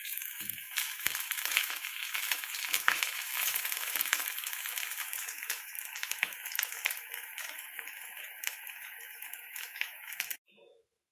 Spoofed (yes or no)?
yes